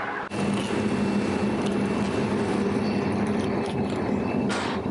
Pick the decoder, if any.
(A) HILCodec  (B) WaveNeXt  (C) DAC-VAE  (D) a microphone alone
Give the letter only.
D